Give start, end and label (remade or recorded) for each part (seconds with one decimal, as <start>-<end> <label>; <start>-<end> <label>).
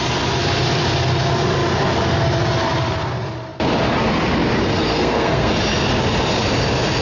0.0-4.9 recorded; 4.9-5.5 remade; 5.5-7.0 recorded